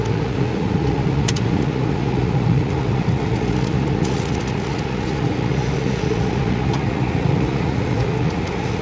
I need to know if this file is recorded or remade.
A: remade